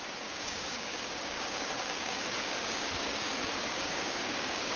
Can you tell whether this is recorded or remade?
remade